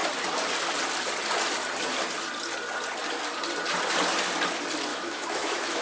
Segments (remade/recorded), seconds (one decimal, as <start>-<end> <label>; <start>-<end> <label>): 0.0-4.9 recorded; 4.9-5.8 remade